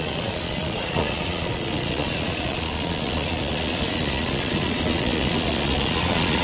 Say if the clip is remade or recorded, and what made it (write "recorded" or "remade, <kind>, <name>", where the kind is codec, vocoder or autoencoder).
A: remade, vocoder, Vocos